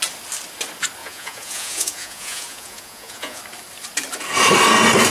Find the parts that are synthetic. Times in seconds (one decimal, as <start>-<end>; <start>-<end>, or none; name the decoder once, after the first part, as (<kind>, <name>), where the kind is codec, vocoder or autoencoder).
1.0-3.4 (vocoder, Vocos)